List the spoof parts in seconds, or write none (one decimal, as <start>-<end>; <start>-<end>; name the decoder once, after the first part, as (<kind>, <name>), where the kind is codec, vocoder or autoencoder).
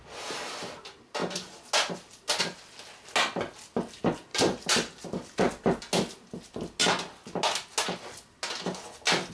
4.3-5.8 (vocoder, BigVGAN v2)